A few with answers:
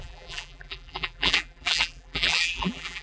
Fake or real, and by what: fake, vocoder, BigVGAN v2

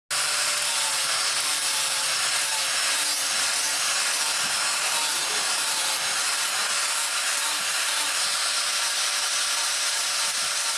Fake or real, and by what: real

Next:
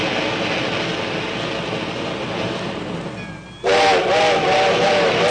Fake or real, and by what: real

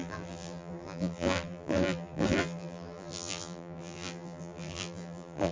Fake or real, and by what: fake, vocoder, BigVGAN v2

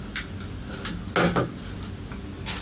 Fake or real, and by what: real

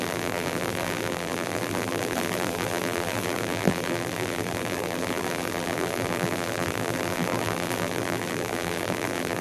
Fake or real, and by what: fake, vocoder, BigVGAN v2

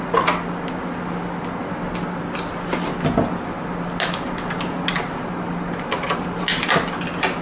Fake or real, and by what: real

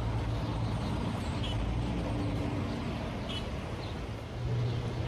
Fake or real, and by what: real